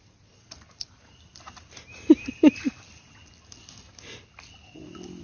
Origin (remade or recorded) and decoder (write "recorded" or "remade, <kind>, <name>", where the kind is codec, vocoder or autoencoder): recorded